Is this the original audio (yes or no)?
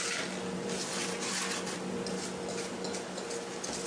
yes